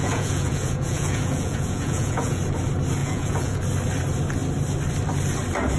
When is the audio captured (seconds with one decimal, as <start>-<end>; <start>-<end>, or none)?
2.4-3.0; 3.6-5.8